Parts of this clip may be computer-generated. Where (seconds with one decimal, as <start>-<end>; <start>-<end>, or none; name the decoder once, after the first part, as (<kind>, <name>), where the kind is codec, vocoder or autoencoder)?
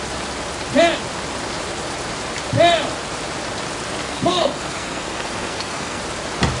4.0-6.0 (codec, SNAC)